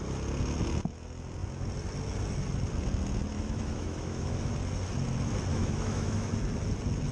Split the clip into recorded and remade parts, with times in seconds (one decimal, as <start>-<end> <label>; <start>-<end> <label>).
0.0-3.3 recorded; 3.3-4.5 remade; 4.5-5.5 recorded; 5.5-6.3 remade; 6.3-7.1 recorded